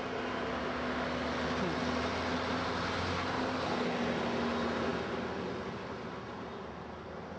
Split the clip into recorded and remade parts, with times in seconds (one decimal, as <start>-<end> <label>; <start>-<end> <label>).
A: 0.0-7.4 recorded